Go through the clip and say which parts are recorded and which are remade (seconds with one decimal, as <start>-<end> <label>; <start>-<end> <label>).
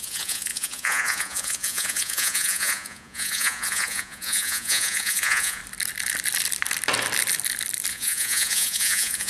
0.0-5.6 remade; 5.6-7.9 recorded; 7.9-9.3 remade